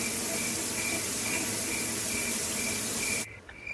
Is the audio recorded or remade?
recorded